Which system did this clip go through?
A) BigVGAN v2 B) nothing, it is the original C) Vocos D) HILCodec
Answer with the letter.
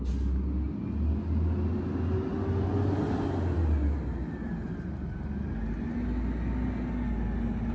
B